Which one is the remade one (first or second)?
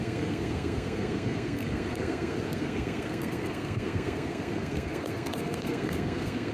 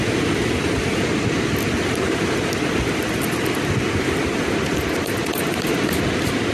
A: first